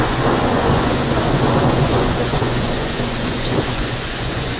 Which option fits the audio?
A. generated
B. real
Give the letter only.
A